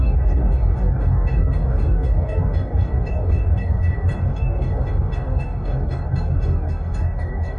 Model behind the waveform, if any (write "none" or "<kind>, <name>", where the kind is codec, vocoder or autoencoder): codec, DAC